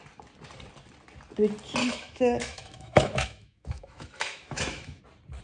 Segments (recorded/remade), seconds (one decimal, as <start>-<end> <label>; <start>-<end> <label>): 0.0-1.8 recorded; 1.8-5.0 remade; 5.0-5.4 recorded

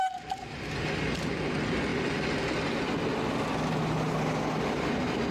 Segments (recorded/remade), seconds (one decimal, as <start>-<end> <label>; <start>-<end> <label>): 0.0-5.3 recorded

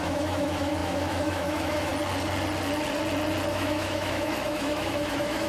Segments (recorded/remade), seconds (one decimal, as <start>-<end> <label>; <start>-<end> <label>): 0.0-1.9 remade; 1.9-3.5 recorded; 3.5-5.5 remade

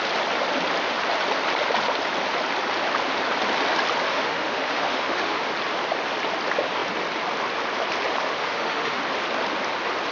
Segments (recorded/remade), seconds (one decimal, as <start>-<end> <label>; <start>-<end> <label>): 0.0-4.1 recorded; 4.1-5.5 remade; 5.5-8.4 recorded; 8.4-9.0 remade; 9.0-10.1 recorded

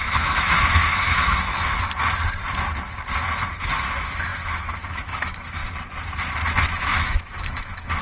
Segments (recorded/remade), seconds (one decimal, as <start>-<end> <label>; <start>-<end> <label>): 0.0-1.5 remade; 1.5-3.5 recorded; 3.5-5.6 remade; 5.6-6.6 recorded; 6.6-8.0 remade